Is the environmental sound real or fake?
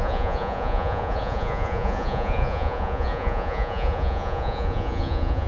fake